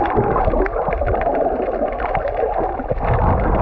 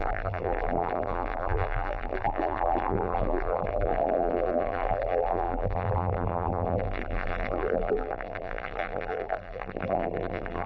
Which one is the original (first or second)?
first